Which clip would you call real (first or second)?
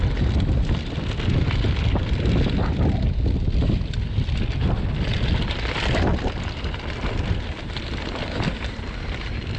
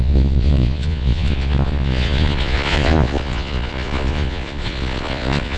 first